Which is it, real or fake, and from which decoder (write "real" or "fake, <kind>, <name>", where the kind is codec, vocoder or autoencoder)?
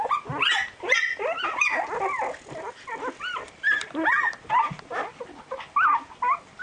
real